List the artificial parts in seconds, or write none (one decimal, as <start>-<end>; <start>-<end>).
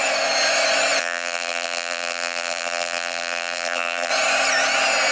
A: 1.0-4.1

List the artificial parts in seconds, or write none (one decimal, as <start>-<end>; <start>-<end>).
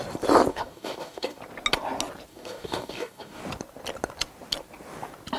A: 0.5-1.4; 2.3-3.4